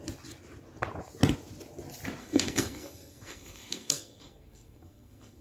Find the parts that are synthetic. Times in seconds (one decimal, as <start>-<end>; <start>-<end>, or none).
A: 2.2-5.4